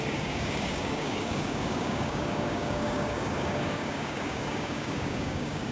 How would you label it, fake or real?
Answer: fake